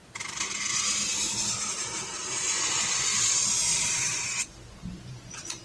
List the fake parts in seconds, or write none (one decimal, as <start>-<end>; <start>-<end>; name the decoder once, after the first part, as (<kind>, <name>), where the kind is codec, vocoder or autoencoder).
2.3-3.1 (vocoder, Vocos); 3.9-5.6